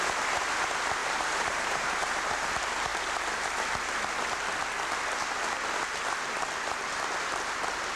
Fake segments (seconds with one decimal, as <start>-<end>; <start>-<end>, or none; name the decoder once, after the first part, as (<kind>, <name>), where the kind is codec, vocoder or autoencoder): 1.0-2.5 (vocoder, BigVGAN v2)